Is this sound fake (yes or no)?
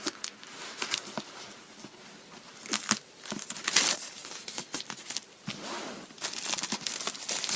no